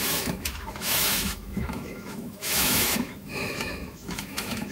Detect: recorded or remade remade